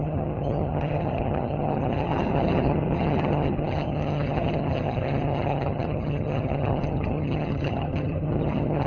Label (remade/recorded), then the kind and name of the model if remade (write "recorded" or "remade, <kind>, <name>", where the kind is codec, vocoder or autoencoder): remade, vocoder, HiFi-GAN